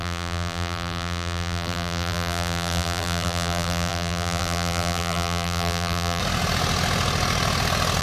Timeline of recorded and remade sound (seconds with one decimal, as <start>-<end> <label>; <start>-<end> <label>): 0.0-6.2 remade; 6.2-8.0 recorded